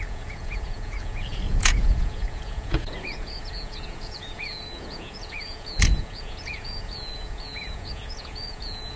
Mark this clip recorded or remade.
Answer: remade